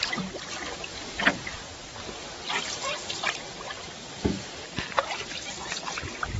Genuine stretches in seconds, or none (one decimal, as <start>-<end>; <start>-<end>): 0.0-6.4